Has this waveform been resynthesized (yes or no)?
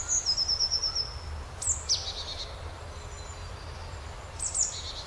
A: no